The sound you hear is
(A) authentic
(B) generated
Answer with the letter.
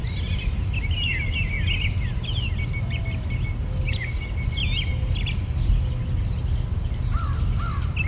A